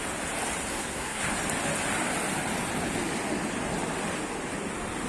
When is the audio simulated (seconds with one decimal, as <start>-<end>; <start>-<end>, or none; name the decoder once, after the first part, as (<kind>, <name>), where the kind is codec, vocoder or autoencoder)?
0.7-1.2 (codec, SNAC)